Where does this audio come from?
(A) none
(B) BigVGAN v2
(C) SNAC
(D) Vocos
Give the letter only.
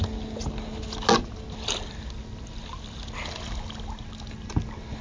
A